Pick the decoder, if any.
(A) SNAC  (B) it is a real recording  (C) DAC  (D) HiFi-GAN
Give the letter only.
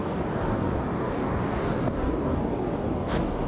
C